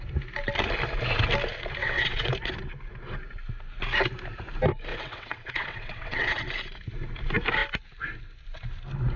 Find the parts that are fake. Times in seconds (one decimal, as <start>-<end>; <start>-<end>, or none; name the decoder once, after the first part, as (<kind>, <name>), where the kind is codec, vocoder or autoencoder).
1.8-2.3 (vocoder, WaveNeXt); 4.9-6.4